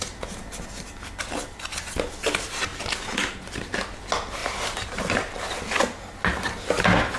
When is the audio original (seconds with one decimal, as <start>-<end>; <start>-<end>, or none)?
0.0-4.4; 5.6-7.2